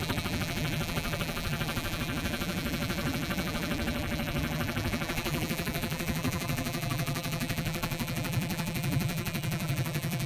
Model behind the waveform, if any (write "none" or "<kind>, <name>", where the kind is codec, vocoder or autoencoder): vocoder, BigVGAN v2